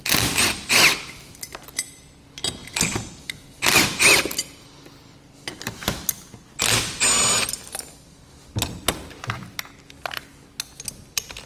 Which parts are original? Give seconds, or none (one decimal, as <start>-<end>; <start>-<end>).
0.0-11.5